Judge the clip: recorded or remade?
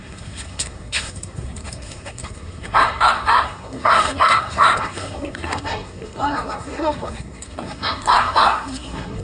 remade